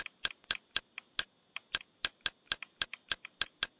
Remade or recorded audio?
recorded